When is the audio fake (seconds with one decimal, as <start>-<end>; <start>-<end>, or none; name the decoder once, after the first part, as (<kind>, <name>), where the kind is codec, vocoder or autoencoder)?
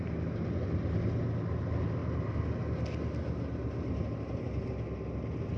none